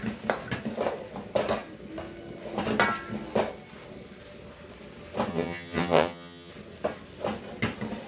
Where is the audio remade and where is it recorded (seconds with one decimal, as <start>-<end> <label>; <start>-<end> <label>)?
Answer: 0.0-5.3 recorded; 5.3-6.5 remade; 6.5-8.1 recorded